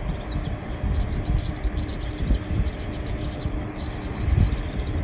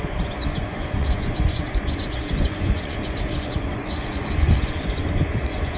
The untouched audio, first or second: first